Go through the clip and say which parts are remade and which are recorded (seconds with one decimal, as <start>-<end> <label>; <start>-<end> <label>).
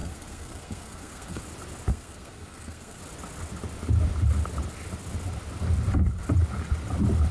0.0-1.4 remade; 1.4-1.9 recorded; 1.9-3.0 remade; 3.0-7.3 recorded